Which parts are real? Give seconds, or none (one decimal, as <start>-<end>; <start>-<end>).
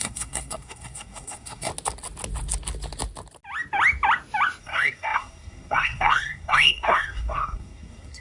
1.7-4.6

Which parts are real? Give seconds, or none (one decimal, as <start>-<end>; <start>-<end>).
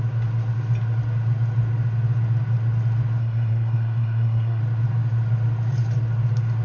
0.0-3.2; 4.6-6.6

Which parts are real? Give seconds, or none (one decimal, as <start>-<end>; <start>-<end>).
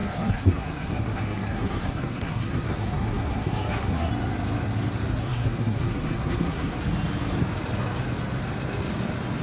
4.1-5.2; 6.8-9.4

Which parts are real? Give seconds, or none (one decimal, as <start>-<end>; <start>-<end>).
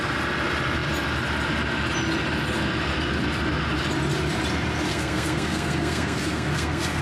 0.0-4.9